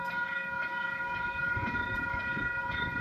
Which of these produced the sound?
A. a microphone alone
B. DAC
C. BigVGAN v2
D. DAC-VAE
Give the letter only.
B